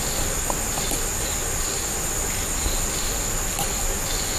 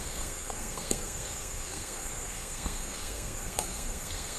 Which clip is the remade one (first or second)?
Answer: second